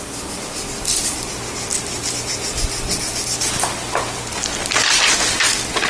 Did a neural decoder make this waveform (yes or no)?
no